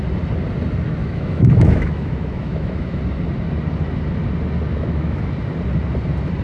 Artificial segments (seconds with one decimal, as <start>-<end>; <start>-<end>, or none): 1.0-3.0; 4.7-5.2